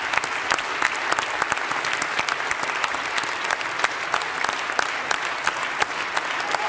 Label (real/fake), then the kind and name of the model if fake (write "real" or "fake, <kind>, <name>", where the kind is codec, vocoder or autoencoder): real